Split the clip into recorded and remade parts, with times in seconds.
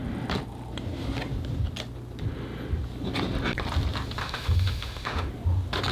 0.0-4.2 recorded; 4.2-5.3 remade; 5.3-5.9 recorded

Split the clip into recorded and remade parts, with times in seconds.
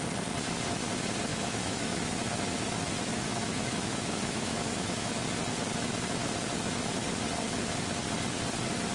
0.0-1.3 recorded; 1.3-2.4 remade; 2.4-3.1 recorded; 3.1-5.2 remade; 5.2-8.9 recorded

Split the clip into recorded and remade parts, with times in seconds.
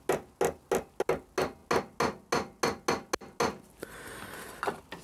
0.0-5.0 recorded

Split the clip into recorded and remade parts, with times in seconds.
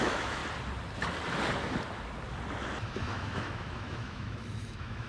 0.0-0.4 remade; 0.4-2.8 recorded; 2.8-5.1 remade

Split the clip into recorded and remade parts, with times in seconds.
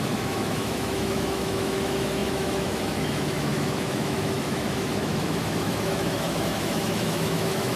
0.0-7.8 remade